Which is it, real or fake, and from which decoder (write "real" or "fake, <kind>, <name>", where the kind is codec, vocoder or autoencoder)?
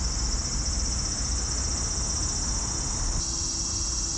real